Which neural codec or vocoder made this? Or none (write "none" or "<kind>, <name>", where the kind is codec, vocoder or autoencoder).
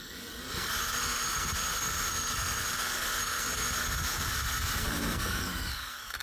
codec, SNAC